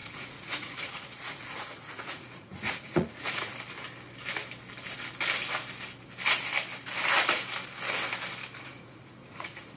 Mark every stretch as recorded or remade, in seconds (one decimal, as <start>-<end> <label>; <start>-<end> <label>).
0.0-3.5 remade; 3.5-8.6 recorded; 8.6-9.8 remade